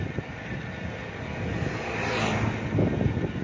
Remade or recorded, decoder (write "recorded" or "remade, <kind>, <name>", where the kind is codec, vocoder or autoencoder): recorded